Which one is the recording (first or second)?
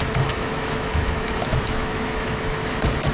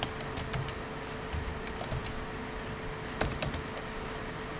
second